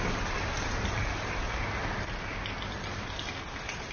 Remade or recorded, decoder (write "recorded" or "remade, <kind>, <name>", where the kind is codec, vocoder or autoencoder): recorded